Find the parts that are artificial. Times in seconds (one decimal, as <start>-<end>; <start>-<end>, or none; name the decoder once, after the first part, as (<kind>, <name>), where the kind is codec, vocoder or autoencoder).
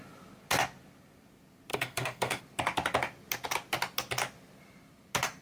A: 1.7-2.4 (codec, SNAC)